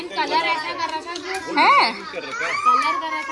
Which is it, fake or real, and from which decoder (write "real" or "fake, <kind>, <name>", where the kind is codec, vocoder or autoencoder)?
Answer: real